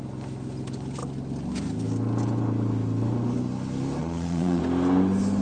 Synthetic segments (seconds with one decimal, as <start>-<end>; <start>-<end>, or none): 4.0-4.6